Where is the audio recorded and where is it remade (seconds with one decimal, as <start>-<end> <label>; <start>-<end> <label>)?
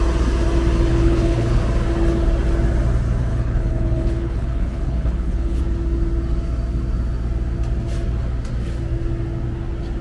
0.0-0.9 recorded; 0.9-1.6 remade; 1.6-3.3 recorded; 3.3-5.6 remade; 5.6-10.0 recorded